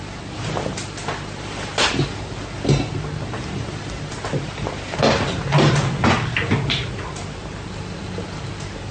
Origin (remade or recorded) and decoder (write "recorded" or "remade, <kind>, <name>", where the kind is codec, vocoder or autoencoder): recorded